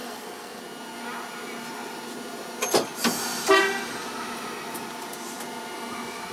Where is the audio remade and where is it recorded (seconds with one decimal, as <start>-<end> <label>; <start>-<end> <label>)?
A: 0.0-0.6 remade; 0.6-6.3 recorded